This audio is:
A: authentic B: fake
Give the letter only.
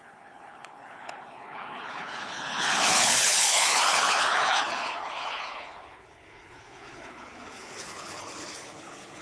B